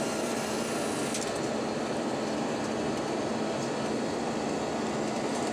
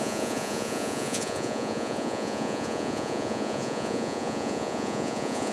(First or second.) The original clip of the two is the first